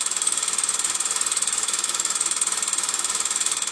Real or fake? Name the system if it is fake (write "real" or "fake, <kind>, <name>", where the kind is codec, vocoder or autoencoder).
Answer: fake, autoencoder, DAC-VAE